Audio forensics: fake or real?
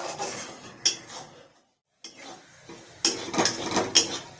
real